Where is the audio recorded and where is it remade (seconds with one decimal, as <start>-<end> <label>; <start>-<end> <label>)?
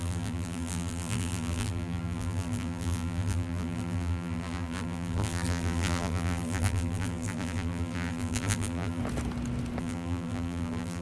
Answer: 0.0-9.0 remade; 9.0-9.8 recorded; 9.8-11.0 remade